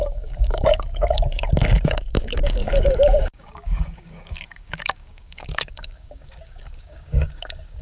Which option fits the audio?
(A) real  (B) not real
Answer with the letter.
B